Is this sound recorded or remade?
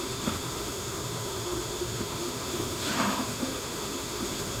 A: remade